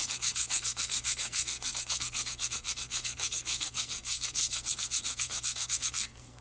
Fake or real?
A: fake